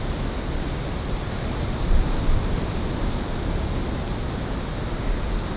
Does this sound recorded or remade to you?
recorded